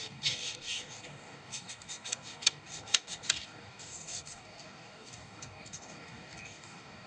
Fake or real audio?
fake